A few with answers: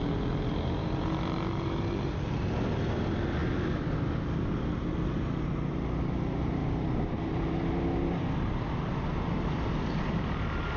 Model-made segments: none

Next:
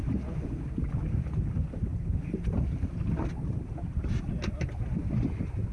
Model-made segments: none

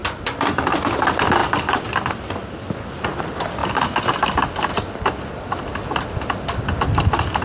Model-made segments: 0.0-0.7 (vocoder, BigVGAN v2)

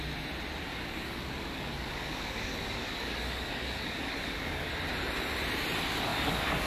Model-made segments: 0.7-4.7 (codec, DAC); 6.1-6.7

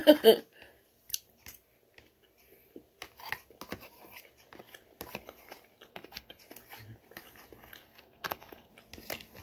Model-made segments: 5.9-6.4 (codec, SNAC); 7.8-8.7

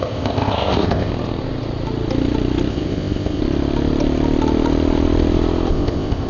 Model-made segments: 0.0-1.1 (codec, ZipCodec); 2.7-3.4; 5.7-6.3

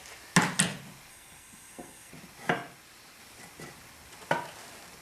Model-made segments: 1.1-2.1 (codec, SNAC)

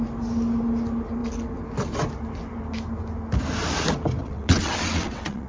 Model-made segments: 4.2-5.5 (vocoder, WaveNeXt)